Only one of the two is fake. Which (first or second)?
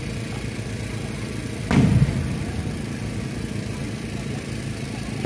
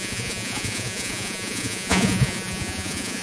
second